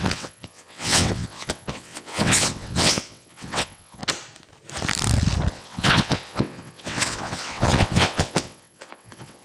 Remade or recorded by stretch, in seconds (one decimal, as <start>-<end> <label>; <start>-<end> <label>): 0.0-4.0 remade; 4.0-5.5 recorded; 5.5-9.4 remade